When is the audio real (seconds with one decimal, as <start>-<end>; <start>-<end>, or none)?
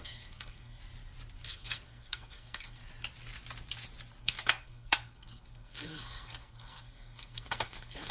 0.8-1.5; 2.8-4.2